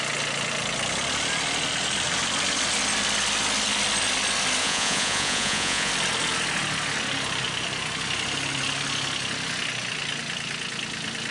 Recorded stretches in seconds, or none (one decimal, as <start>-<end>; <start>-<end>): 0.0-4.6; 5.9-11.3

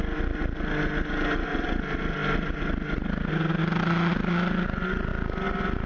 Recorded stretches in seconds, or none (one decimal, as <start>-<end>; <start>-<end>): 0.0-5.9